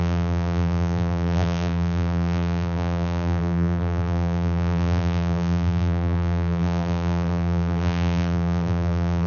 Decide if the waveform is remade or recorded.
remade